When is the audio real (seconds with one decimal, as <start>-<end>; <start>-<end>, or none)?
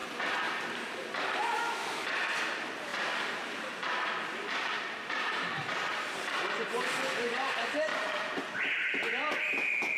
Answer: 0.0-2.9; 6.5-7.9; 8.6-10.0